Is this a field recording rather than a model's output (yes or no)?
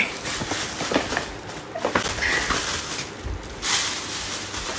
yes